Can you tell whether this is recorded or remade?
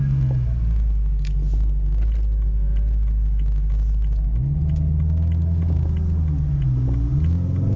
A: recorded